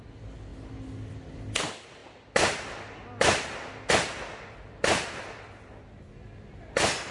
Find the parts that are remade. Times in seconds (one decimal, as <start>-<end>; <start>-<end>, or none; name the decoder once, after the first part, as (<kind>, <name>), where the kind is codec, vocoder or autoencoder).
none